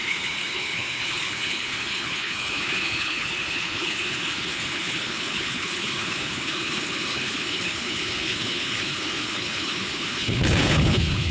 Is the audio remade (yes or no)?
yes